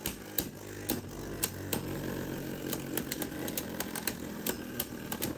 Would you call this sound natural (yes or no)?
yes